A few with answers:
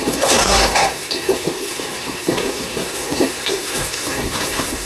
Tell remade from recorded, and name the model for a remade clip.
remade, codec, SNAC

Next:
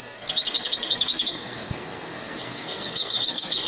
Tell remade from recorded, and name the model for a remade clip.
remade, codec, SNAC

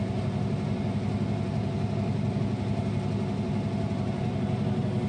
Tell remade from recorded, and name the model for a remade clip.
recorded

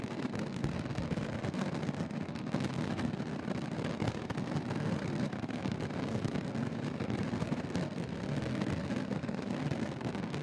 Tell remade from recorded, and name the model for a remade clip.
remade, codec, SNAC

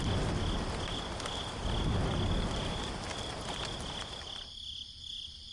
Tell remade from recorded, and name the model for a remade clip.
recorded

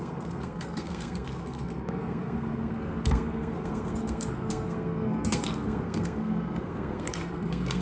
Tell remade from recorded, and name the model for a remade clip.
remade, codec, SNAC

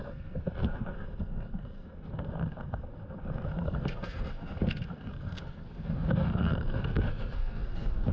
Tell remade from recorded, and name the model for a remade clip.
remade, codec, SNAC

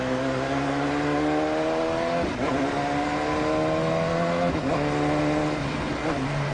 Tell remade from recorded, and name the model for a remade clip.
recorded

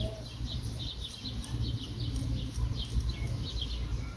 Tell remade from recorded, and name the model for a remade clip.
recorded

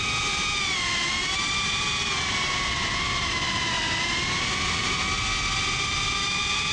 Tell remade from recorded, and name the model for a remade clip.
recorded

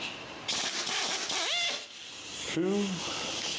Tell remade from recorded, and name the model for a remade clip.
recorded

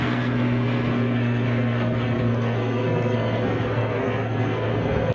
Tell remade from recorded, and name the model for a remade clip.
remade, codec, SNAC